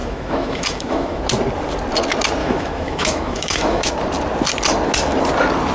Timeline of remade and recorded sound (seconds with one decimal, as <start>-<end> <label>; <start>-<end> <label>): 0.0-1.2 remade; 1.2-2.4 recorded; 2.4-3.9 remade; 3.9-5.7 recorded